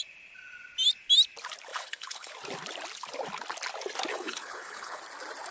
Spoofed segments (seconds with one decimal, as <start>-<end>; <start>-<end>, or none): 1.7-2.3; 4.1-5.0